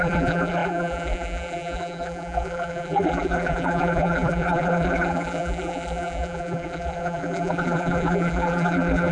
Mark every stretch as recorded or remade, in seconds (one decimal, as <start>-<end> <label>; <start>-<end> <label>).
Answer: 0.0-9.1 remade